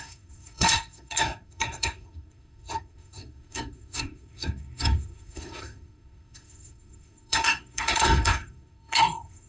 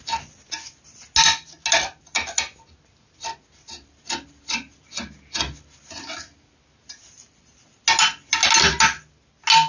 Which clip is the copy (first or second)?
first